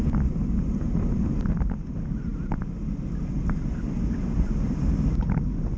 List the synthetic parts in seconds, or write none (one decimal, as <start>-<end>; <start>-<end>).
none